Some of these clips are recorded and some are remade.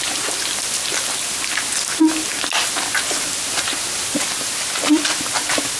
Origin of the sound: recorded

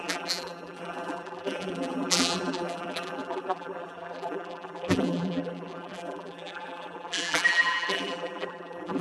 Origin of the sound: remade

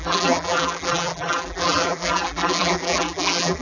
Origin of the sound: remade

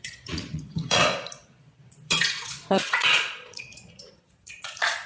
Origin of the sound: remade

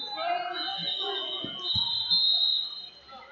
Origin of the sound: recorded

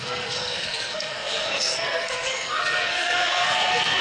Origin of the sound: remade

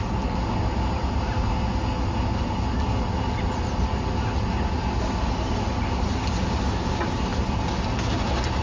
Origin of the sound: recorded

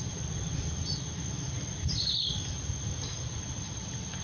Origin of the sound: recorded